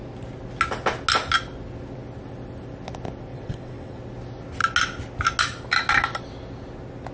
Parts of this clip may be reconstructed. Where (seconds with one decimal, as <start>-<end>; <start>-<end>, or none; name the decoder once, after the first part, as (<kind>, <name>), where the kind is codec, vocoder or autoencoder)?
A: 3.3-4.0 (vocoder, WaveNeXt)